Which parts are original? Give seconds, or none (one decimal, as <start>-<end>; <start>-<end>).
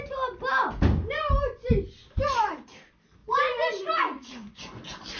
0.0-3.2; 4.8-5.2